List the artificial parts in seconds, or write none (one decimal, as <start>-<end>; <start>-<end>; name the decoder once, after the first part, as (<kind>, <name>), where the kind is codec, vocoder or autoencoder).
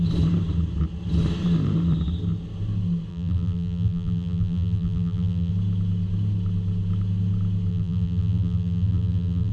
3.1-5.5 (vocoder, BigVGAN v2); 7.7-9.5